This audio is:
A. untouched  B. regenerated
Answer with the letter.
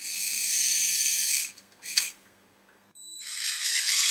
B